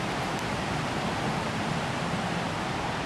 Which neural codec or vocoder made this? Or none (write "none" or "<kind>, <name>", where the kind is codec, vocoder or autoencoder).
vocoder, BigVGAN v2